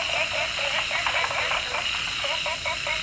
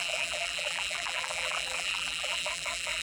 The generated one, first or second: second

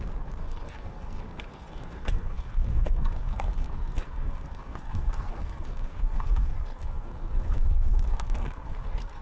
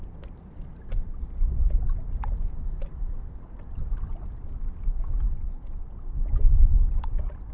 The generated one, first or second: first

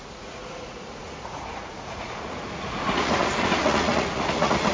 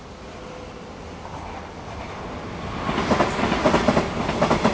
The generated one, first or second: first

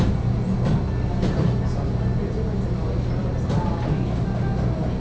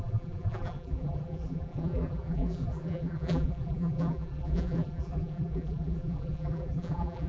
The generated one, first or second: second